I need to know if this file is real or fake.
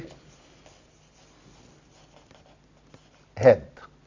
real